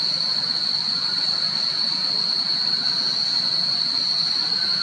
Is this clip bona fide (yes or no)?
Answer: yes